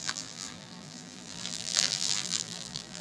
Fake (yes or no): yes